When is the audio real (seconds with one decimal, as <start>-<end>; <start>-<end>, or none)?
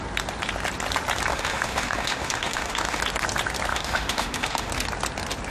0.0-1.3; 3.0-3.7; 4.7-5.5